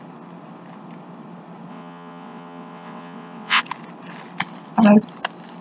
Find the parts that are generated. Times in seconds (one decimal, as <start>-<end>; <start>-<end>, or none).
1.7-3.6